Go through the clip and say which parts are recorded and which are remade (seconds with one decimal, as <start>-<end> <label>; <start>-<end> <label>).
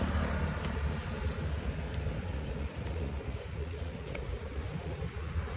0.0-2.2 recorded; 2.2-5.6 remade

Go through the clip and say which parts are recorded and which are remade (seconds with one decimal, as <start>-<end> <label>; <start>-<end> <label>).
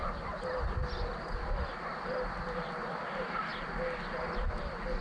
0.0-3.0 recorded; 3.0-3.5 remade; 3.5-5.0 recorded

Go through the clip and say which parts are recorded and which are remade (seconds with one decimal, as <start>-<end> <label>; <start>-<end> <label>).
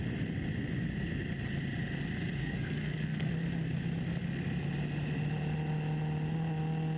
0.0-2.4 recorded; 2.4-3.3 remade; 3.3-7.0 recorded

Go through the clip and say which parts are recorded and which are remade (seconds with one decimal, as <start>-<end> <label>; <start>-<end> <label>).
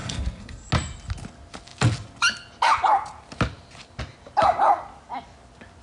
0.0-0.7 remade; 0.7-5.8 recorded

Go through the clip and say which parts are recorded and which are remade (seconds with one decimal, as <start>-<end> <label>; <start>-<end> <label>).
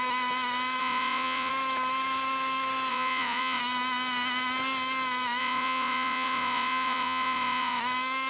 0.0-0.8 recorded; 0.8-1.5 remade; 1.5-2.9 recorded; 2.9-3.6 remade; 3.6-5.4 recorded; 5.4-7.8 remade; 7.8-8.3 recorded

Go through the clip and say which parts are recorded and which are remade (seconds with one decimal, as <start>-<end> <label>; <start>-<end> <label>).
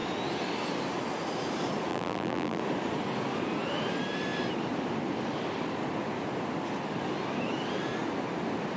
0.0-1.9 recorded; 1.9-2.6 remade; 2.6-8.8 recorded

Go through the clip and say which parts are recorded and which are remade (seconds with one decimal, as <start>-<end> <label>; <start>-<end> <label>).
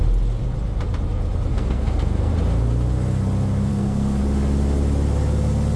0.0-1.5 recorded; 1.5-2.3 remade; 2.3-3.7 recorded; 3.7-4.2 remade; 4.2-5.8 recorded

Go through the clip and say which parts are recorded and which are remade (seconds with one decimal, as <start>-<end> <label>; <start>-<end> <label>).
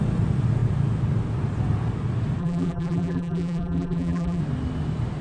0.0-2.4 recorded; 2.4-4.4 remade; 4.4-5.2 recorded